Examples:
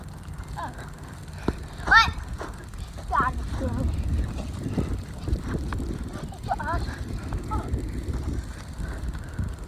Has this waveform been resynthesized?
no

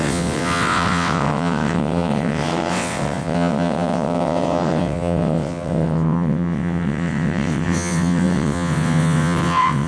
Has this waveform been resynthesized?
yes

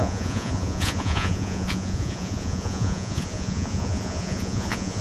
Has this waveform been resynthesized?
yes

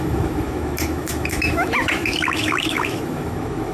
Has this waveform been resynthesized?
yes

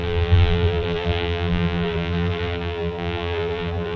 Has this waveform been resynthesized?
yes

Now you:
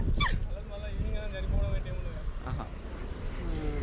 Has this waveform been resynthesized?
no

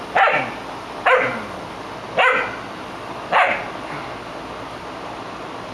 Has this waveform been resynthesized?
no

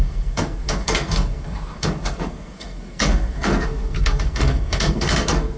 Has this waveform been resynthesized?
yes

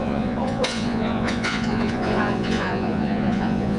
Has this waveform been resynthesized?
yes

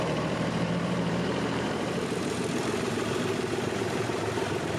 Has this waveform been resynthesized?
yes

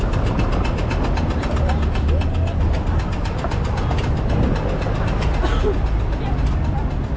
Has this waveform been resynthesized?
no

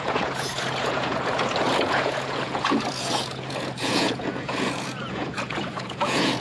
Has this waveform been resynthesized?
yes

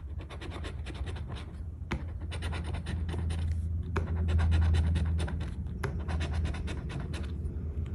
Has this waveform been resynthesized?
no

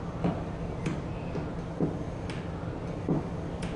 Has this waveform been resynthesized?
no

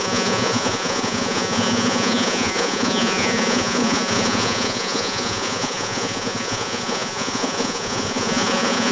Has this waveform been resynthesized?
yes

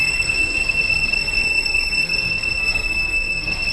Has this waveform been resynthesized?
yes